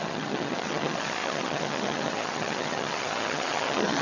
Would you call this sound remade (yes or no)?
yes